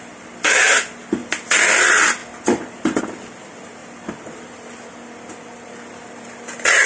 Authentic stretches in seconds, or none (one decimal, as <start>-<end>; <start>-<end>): 0.0-6.9

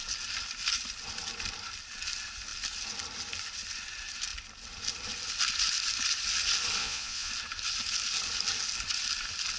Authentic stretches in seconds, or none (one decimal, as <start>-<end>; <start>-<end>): 0.0-6.8; 7.3-9.6